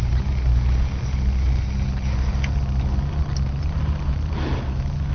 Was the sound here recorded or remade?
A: recorded